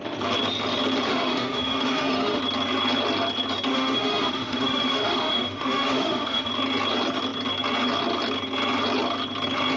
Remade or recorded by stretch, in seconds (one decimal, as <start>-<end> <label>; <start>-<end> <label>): 0.0-1.1 recorded; 1.1-2.4 remade; 2.4-3.7 recorded; 3.7-6.5 remade; 6.5-9.8 recorded